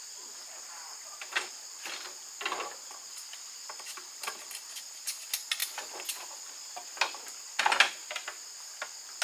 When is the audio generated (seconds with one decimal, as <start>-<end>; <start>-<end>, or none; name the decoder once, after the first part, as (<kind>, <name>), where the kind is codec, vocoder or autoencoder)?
none